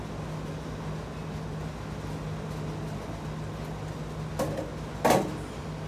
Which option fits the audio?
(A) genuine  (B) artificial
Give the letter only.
A